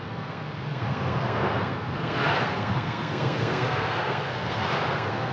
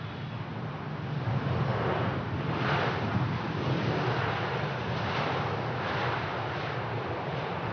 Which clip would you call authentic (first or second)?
second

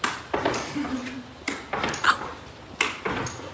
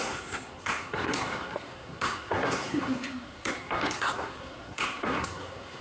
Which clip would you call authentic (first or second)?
first